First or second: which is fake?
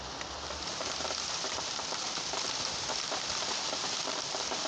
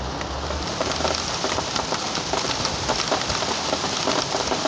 first